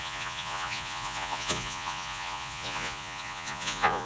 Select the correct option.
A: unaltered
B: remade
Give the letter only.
B